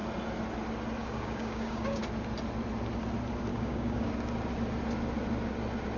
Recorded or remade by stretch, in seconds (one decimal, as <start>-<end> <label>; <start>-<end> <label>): 0.0-1.0 recorded; 1.0-2.0 remade; 2.0-3.5 recorded; 3.5-4.1 remade; 4.1-6.0 recorded